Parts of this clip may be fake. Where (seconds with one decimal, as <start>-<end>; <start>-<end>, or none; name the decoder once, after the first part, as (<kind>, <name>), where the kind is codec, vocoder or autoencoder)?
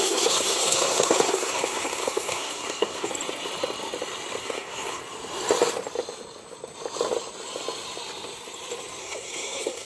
0.0-3.1 (codec, SNAC); 4.4-5.0; 9.0-9.8